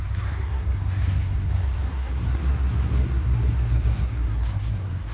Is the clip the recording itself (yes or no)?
no